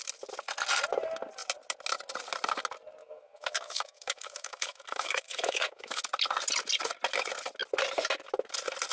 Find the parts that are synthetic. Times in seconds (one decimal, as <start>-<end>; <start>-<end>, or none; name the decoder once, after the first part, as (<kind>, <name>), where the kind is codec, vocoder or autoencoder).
3.0-6.0 (autoencoder, DAC-VAE)